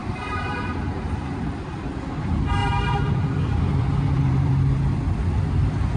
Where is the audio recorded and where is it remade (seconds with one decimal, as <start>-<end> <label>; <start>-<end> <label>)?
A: 0.0-1.2 remade; 1.2-2.6 recorded; 2.6-4.5 remade; 4.5-6.0 recorded